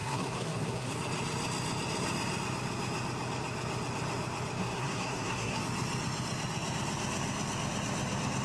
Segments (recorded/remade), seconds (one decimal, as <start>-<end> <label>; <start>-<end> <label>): 0.0-0.9 remade; 0.9-4.6 recorded; 4.6-5.6 remade; 5.6-8.4 recorded